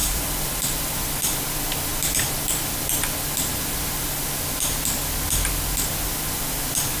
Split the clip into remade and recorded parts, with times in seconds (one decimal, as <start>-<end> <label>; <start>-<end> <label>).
0.0-1.4 remade; 1.4-7.0 recorded